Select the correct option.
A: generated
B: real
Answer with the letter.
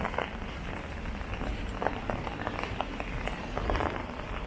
B